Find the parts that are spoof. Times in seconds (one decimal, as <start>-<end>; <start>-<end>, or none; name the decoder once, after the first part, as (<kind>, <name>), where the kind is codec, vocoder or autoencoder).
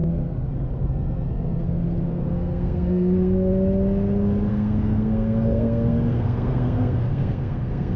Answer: 0.0-3.5 (codec, SNAC); 4.5-8.0